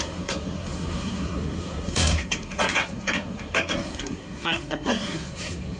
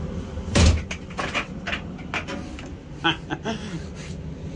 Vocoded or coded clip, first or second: first